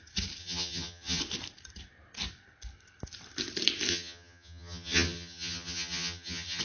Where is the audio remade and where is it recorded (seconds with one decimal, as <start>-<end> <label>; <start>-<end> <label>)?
0.0-0.4 recorded; 0.4-1.2 remade; 1.2-3.9 recorded; 3.9-6.6 remade